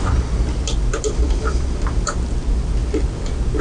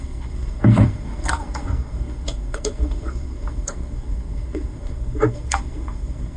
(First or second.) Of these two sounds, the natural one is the first